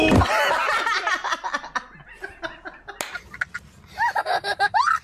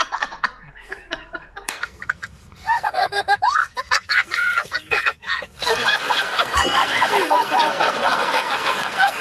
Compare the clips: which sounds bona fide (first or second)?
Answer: first